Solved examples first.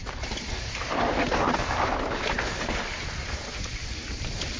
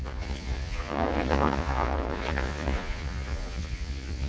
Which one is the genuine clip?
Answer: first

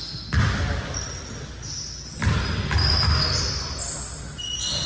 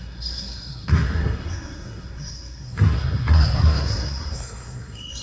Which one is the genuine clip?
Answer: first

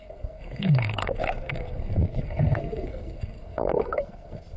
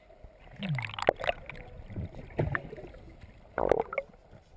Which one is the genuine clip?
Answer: second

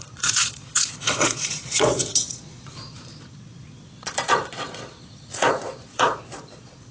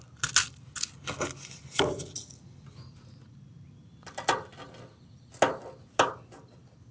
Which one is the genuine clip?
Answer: second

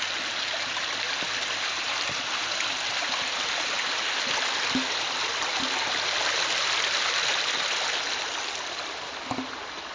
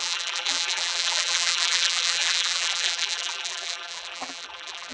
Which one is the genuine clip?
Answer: first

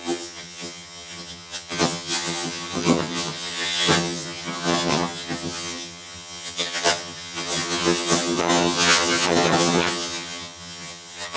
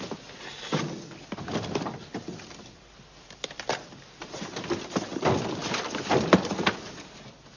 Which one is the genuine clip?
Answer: second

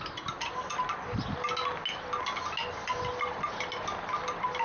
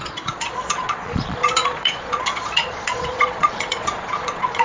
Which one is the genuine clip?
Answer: first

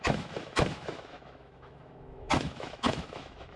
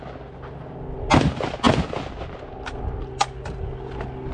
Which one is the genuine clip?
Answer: second